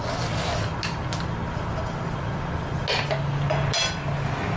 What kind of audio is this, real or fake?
real